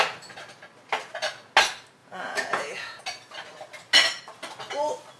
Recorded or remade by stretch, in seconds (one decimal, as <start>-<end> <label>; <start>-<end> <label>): 0.0-2.0 recorded; 2.0-3.0 remade; 3.0-5.2 recorded